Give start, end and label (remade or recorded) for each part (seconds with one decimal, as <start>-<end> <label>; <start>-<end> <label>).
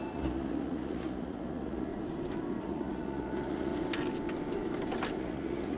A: 0.0-1.9 remade; 1.9-2.6 recorded; 2.6-3.7 remade; 3.7-5.2 recorded; 5.2-5.8 remade